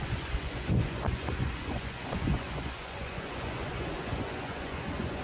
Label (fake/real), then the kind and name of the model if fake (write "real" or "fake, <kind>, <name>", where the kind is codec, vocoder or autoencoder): fake, vocoder, Vocos